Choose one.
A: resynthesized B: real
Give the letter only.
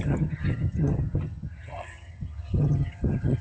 A